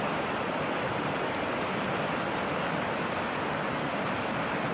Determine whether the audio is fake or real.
real